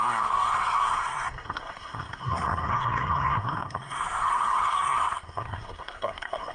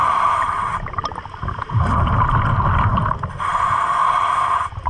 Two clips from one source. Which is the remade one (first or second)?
first